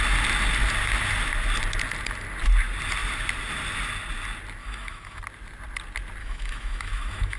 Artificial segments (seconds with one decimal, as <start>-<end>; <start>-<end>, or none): 4.6-5.2; 6.2-7.4